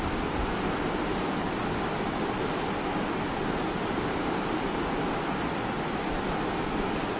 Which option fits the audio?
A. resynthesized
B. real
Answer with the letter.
B